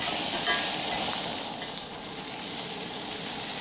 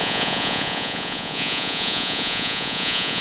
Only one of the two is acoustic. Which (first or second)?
first